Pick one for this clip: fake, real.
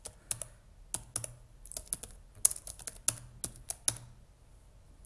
real